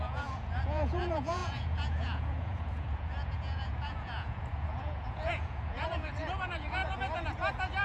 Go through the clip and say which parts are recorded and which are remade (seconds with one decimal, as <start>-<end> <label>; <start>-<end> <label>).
0.0-6.8 remade; 6.8-7.8 recorded